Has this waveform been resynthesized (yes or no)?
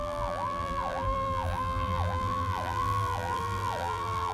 yes